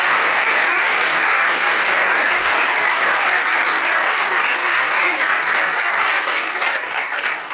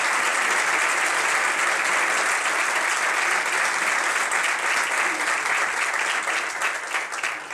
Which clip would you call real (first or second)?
second